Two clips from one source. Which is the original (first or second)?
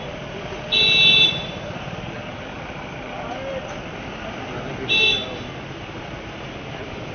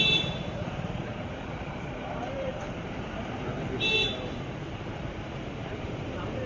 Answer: first